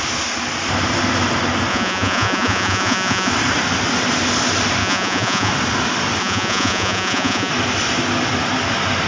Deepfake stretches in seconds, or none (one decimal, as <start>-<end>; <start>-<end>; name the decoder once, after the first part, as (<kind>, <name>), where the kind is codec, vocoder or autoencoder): 1.7-3.3 (vocoder, Vocos); 4.8-5.5; 6.2-7.5